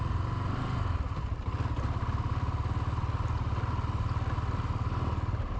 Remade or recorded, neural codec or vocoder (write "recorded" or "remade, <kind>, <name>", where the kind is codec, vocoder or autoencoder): recorded